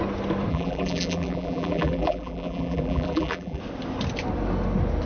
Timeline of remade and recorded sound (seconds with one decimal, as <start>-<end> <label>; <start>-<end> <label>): 0.0-0.5 recorded; 0.5-3.6 remade; 3.6-5.1 recorded